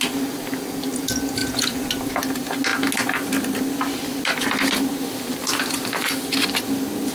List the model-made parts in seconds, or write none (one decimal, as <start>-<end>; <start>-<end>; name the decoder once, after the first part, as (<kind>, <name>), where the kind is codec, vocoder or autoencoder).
1.4-1.9 (vocoder, Vocos)